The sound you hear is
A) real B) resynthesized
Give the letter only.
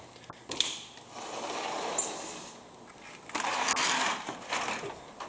A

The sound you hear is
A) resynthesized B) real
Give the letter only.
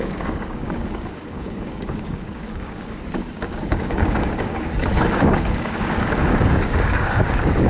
A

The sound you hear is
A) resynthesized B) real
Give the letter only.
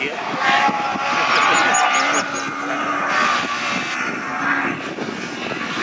B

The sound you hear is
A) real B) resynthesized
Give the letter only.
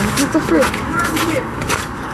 B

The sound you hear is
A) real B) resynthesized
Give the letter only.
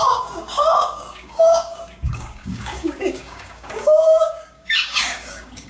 B